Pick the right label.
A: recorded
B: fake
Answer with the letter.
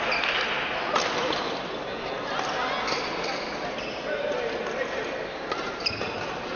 A